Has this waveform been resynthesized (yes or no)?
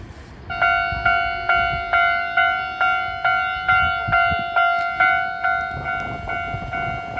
no